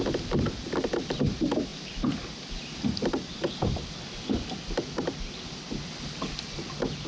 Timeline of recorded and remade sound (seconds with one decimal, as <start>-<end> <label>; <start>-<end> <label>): 0.0-7.1 recorded